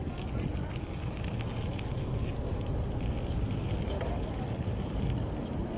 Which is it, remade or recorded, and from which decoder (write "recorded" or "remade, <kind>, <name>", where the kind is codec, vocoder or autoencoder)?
recorded